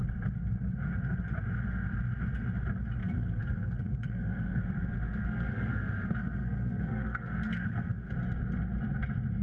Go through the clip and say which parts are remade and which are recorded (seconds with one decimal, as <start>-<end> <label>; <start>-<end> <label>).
0.0-3.0 recorded; 3.0-8.1 remade; 8.1-9.4 recorded